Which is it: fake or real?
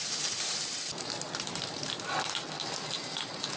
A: fake